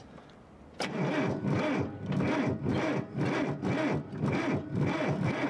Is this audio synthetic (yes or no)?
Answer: no